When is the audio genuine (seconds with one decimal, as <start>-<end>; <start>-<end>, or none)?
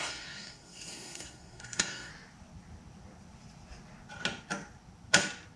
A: 2.1-5.6